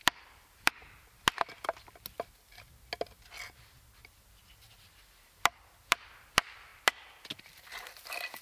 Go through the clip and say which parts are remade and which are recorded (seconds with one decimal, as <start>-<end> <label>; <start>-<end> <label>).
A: 0.0-8.4 recorded